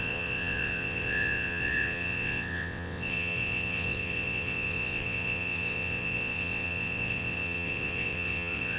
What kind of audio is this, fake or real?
fake